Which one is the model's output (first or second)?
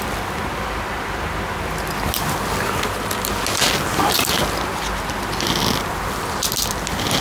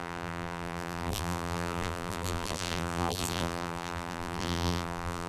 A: second